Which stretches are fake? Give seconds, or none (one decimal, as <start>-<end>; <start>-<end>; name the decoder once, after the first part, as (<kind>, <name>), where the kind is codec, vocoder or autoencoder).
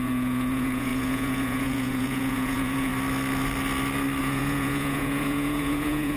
0.0-2.9 (vocoder, Vocos); 4.2-6.2